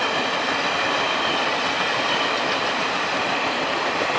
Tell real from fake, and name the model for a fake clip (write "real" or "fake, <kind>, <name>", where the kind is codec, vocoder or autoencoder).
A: fake, vocoder, BigVGAN v2